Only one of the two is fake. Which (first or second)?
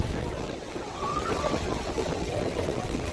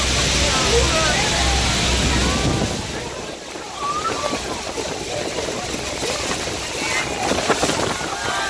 first